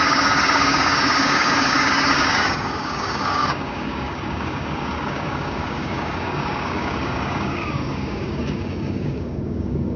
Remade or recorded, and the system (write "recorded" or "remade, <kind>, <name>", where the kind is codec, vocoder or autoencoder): remade, codec, DAC